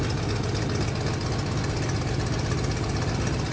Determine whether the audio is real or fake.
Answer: real